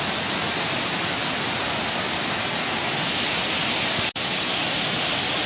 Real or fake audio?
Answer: real